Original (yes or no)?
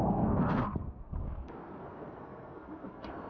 no